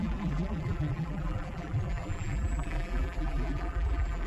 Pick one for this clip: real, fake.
fake